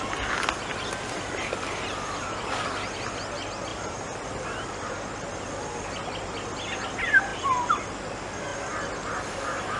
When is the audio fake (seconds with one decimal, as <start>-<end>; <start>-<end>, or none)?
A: 3.7-4.9; 7.3-8.0; 8.5-9.2